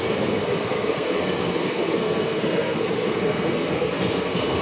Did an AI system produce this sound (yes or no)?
yes